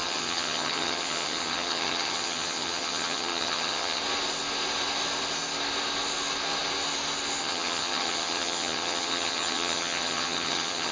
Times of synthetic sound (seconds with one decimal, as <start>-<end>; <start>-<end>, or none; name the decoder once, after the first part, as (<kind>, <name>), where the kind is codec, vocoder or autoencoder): 0.0-4.0 (vocoder, HiFi-GAN); 7.4-10.9

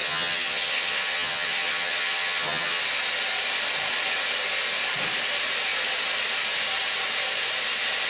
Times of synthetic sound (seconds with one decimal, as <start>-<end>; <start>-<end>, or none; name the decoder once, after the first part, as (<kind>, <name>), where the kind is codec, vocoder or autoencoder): 0.0-2.8 (vocoder, HiFi-GAN)

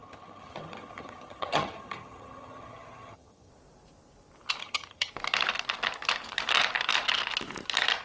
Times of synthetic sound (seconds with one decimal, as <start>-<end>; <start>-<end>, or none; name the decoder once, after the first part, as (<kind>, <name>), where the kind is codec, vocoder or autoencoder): 0.0-3.5 (vocoder, HiFi-GAN); 4.6-5.1

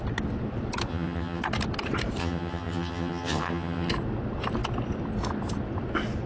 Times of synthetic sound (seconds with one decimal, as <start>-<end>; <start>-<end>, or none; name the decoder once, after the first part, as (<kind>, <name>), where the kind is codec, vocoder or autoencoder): 0.9-1.4 (vocoder, HiFi-GAN); 2.2-3.9

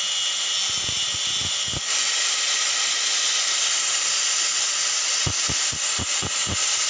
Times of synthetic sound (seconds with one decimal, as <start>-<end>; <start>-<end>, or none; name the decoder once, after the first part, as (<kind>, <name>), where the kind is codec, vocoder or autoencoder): none

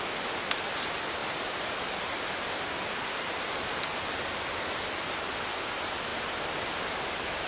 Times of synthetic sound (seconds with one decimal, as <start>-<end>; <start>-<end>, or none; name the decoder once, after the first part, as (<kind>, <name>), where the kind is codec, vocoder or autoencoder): none

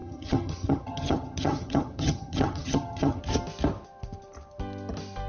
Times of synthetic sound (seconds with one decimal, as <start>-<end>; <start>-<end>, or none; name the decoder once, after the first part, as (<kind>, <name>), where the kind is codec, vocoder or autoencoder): 0.0-3.2 (vocoder, HiFi-GAN)

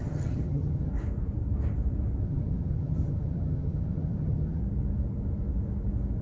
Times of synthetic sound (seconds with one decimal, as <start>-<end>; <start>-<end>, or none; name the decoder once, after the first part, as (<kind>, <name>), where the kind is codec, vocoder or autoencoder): 0.0-0.9 (vocoder, HiFi-GAN); 2.2-4.6